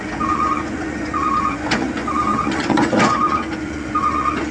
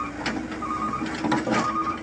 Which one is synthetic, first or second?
first